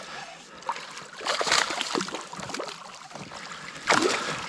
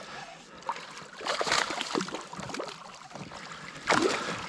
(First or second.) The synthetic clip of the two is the second